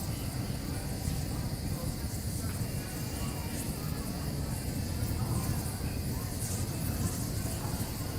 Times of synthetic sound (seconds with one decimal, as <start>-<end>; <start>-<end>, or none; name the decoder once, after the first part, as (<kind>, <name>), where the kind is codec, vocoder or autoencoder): none